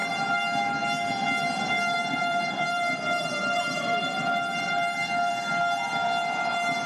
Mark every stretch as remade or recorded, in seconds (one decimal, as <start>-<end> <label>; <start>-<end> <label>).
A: 0.0-2.0 recorded; 2.0-5.3 remade; 5.3-6.9 recorded